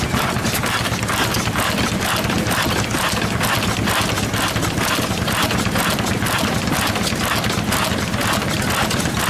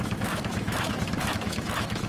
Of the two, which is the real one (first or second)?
first